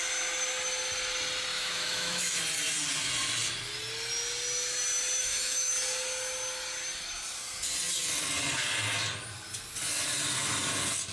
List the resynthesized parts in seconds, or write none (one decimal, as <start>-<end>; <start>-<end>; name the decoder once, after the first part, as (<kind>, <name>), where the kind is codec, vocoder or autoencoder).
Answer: 1.5-2.4 (autoencoder, DAC-VAE); 5.2-5.7